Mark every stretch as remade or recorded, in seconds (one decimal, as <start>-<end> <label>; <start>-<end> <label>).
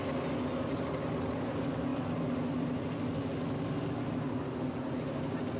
0.0-5.6 recorded